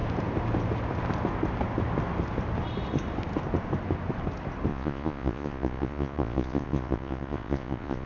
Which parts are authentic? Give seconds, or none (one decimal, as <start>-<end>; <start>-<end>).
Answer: 0.0-4.7

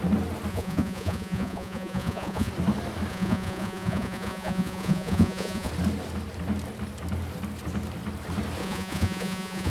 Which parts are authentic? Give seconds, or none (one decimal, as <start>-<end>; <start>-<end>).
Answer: 0.0-0.5; 2.5-3.1; 5.7-8.6

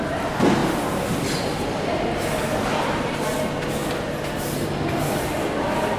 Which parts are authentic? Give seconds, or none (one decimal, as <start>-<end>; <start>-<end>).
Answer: 0.0-6.0